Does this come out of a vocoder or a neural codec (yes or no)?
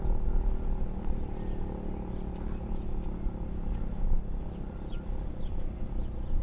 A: no